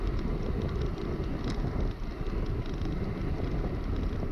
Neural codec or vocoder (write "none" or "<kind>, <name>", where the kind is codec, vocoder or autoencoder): none